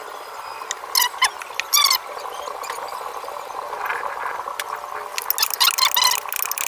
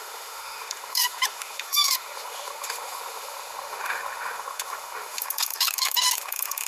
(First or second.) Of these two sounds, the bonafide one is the first